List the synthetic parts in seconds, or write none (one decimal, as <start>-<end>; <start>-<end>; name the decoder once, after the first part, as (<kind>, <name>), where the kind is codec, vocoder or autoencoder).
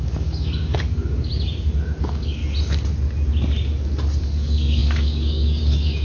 0.0-1.3 (codec, DAC); 2.0-2.4; 4.2-6.0